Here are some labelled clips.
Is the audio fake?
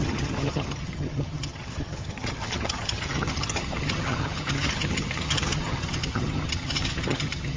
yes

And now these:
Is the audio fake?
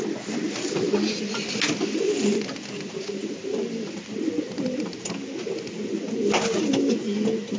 no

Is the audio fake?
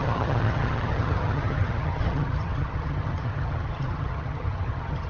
yes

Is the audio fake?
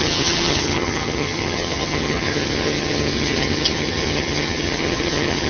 yes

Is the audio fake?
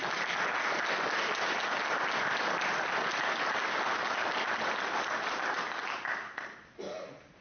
no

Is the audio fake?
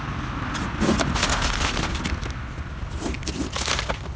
no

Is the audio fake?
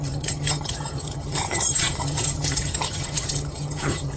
yes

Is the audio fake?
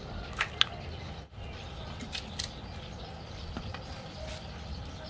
no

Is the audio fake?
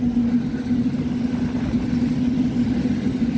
no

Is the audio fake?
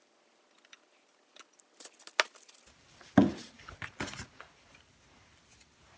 no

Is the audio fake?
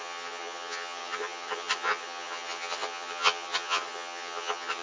yes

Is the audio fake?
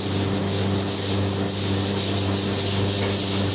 no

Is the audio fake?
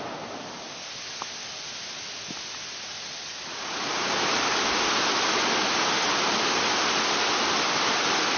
no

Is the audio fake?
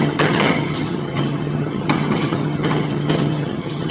yes